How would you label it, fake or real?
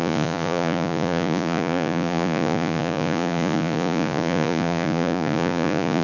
fake